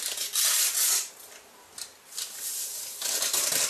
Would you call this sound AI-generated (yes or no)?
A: no